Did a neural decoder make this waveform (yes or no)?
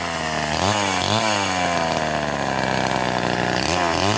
no